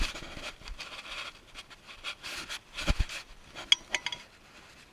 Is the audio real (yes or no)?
yes